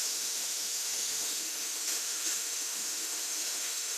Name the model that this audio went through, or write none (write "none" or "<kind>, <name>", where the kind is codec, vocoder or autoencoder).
autoencoder, DAC-VAE